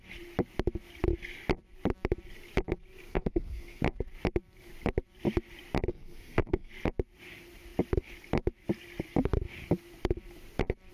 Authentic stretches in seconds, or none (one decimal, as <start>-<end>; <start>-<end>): 0.0-3.1; 3.8-5.9; 6.7-10.9